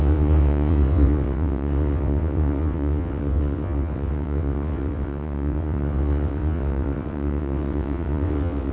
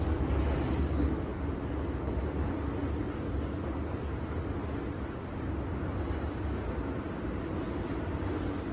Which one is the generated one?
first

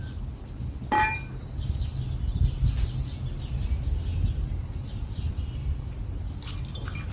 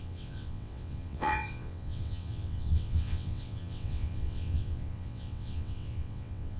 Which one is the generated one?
second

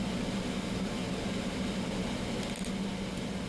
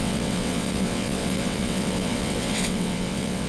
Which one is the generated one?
second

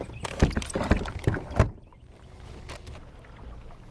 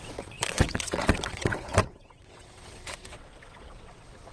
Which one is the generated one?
second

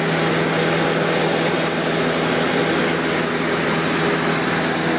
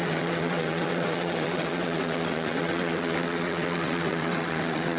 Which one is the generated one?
second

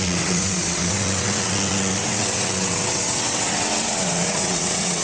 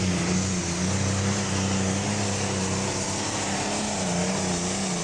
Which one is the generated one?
first